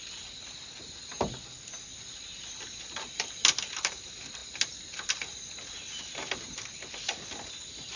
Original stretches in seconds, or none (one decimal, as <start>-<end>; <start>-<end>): 0.0-8.0